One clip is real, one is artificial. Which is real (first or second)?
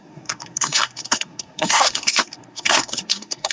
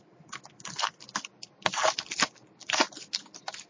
second